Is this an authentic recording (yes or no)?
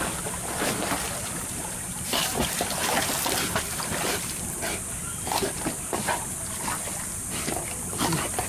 yes